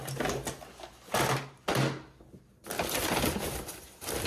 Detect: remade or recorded recorded